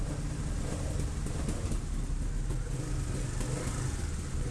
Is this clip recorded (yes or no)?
yes